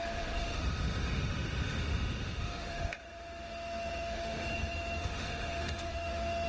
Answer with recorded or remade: remade